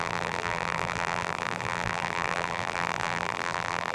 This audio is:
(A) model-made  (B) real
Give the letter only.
A